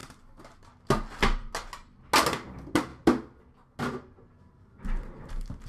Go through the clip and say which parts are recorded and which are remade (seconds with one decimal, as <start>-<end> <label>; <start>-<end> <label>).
0.0-5.7 recorded